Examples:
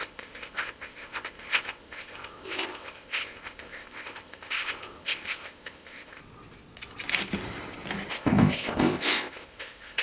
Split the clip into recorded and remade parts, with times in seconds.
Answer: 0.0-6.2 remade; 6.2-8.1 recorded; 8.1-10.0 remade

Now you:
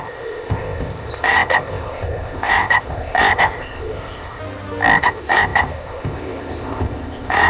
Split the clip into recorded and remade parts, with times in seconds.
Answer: 0.0-4.4 remade; 4.4-5.0 recorded; 5.0-7.5 remade

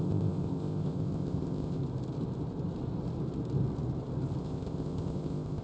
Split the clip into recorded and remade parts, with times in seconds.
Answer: 0.0-1.8 remade; 1.8-4.4 recorded; 4.4-5.6 remade

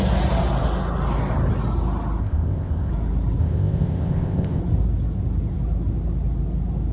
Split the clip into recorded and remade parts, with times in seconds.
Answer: 0.0-2.2 recorded; 2.2-2.9 remade; 2.9-3.4 recorded; 3.4-4.6 remade; 4.6-6.9 recorded

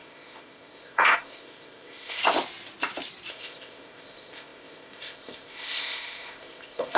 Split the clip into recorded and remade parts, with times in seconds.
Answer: 0.0-2.2 remade; 2.2-3.3 recorded; 3.3-7.0 remade